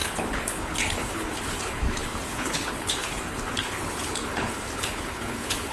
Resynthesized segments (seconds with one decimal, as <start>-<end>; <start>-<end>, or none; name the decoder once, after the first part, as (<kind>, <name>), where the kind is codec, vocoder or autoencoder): 0.0-5.7 (codec, HILCodec)